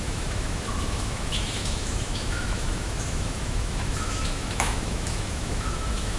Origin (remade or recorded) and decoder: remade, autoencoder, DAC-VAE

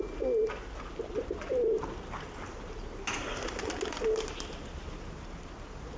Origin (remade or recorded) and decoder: recorded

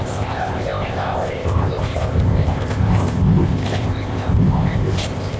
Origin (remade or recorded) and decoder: remade, codec, ZipCodec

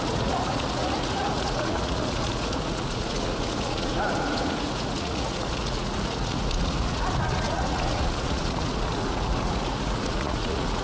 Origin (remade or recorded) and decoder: remade, vocoder, Vocos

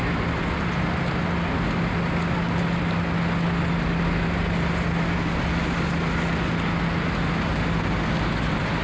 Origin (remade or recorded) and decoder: recorded